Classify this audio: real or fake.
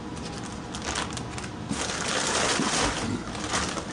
real